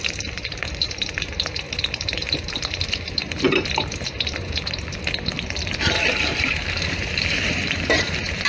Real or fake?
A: fake